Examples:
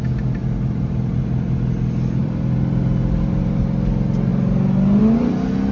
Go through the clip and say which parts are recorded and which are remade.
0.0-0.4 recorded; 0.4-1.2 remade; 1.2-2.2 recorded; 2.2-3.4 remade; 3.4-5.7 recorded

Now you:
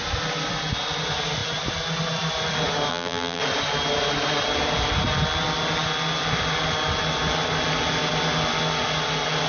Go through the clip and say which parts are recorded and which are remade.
0.0-2.9 recorded; 2.9-3.4 remade; 3.4-9.5 recorded

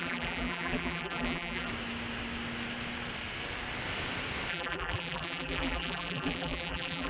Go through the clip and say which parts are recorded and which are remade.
0.0-1.7 remade; 1.7-4.5 recorded; 4.5-7.1 remade

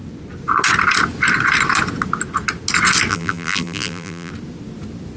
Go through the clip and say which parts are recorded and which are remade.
0.0-3.1 recorded; 3.1-4.3 remade; 4.3-5.2 recorded

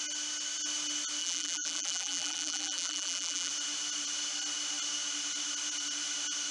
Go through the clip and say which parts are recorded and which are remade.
0.0-1.2 recorded; 1.2-3.5 remade; 3.5-6.5 recorded

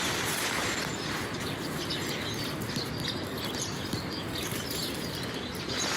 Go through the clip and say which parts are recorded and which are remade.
0.0-6.0 recorded

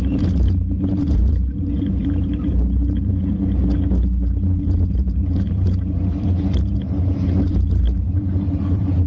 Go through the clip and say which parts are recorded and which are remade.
0.0-3.6 remade; 3.6-4.9 recorded; 4.9-9.1 remade